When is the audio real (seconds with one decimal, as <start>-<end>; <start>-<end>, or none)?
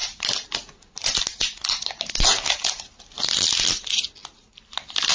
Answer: 0.0-5.1